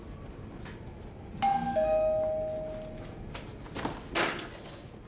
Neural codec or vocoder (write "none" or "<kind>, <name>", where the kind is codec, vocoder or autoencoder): none